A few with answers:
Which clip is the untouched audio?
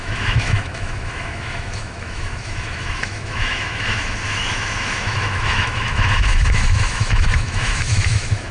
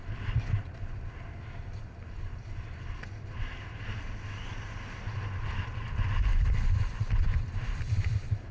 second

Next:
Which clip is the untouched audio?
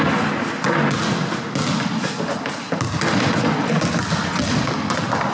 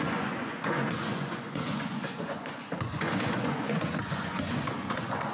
first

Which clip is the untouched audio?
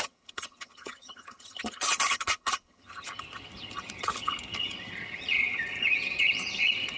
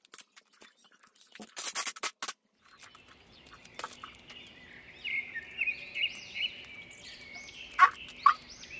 second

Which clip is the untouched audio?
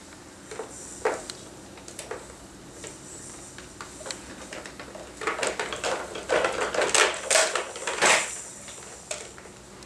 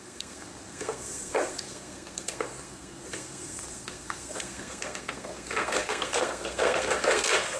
first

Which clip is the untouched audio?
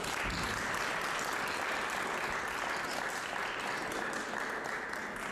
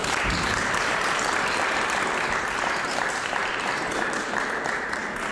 first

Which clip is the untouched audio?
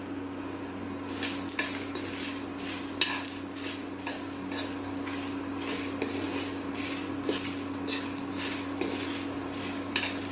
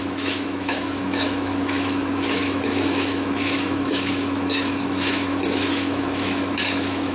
first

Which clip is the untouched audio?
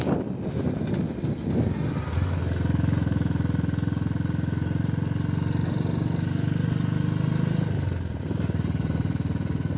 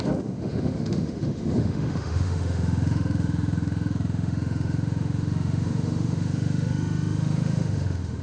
first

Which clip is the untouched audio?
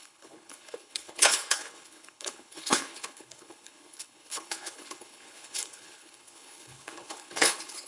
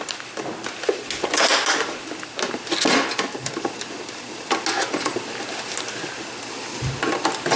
second